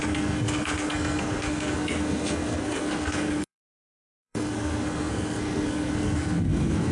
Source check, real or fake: fake